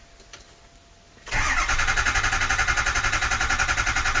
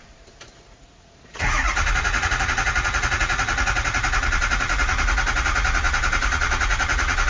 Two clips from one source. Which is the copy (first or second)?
second